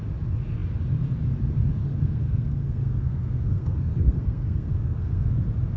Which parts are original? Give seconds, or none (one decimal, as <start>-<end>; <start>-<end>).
0.0-1.8; 5.3-5.8

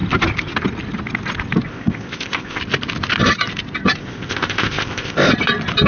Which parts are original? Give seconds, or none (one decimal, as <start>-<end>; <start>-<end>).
0.0-1.7; 2.6-4.0; 5.3-5.9